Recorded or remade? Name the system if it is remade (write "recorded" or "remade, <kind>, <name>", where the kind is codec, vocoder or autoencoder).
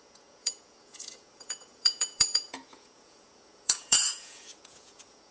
remade, vocoder, Vocos